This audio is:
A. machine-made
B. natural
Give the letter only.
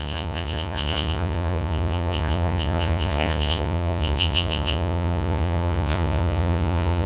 A